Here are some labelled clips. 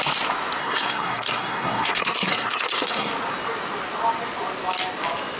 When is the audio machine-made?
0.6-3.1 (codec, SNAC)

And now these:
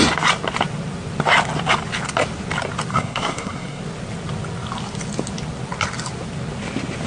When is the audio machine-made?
2.9-3.8 (codec, SNAC)

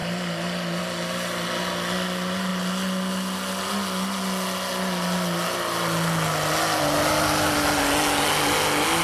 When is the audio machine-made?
none

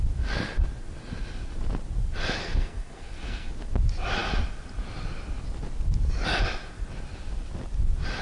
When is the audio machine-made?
2.4-3.5 (codec, SNAC)

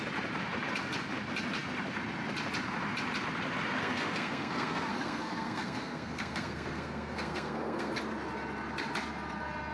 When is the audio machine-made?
3.8-8.0 (codec, SNAC)

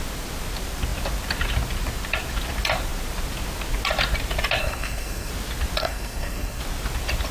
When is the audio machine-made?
4.6-5.3 (codec, SNAC); 5.8-6.6

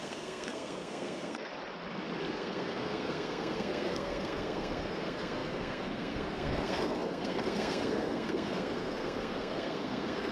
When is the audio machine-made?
0.0-1.5 (codec, SNAC); 2.3-10.3

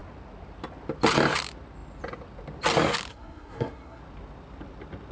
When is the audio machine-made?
3.1-4.0 (codec, SNAC)